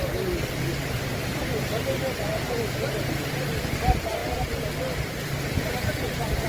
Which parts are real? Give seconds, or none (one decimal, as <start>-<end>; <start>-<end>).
0.0-6.5